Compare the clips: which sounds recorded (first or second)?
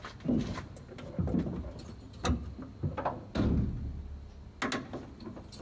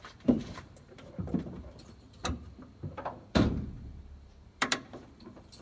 first